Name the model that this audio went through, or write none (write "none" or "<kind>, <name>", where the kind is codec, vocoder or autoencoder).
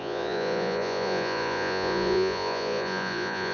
vocoder, Vocos